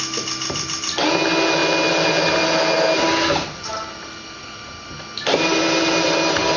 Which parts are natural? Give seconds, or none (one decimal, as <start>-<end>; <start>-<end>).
0.0-6.6